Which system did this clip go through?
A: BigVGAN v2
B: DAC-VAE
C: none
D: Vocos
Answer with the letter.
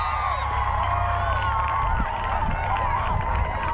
C